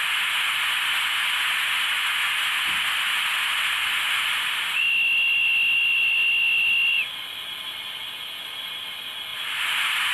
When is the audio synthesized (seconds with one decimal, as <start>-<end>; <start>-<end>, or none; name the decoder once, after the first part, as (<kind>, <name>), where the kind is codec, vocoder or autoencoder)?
none